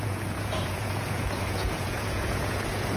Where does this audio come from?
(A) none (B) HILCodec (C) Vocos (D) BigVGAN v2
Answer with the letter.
C